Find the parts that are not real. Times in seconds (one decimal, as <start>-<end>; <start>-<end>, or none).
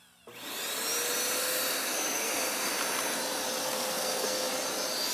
1.7-2.7; 3.6-4.5